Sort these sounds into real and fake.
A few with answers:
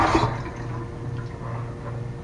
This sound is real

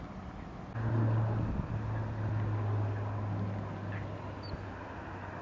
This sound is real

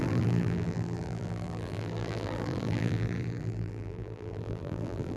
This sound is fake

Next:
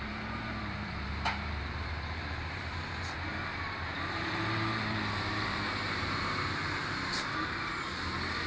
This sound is fake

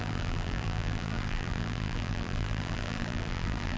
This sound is fake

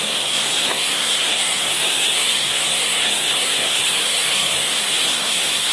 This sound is fake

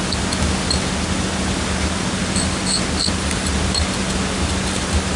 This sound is real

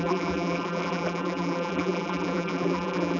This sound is fake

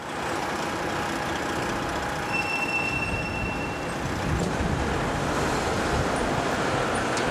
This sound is real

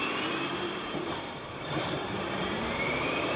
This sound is fake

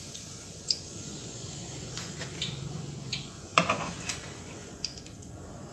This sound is fake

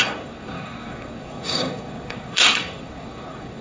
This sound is fake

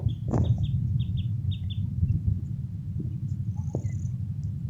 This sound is real